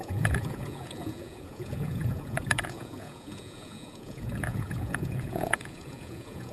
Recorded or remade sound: remade